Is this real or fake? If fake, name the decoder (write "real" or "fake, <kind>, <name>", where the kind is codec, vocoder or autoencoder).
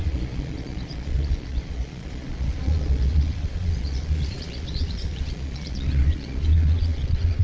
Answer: fake, vocoder, Vocos